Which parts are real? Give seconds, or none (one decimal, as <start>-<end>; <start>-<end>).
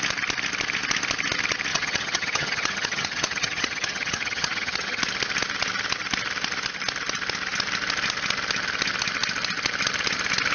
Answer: 0.0-1.7; 5.0-10.5